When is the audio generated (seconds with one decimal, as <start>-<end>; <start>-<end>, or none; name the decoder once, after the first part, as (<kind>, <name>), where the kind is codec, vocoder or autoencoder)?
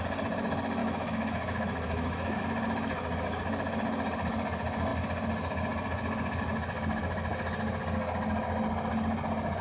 0.8-2.4 (autoencoder, DAC-VAE)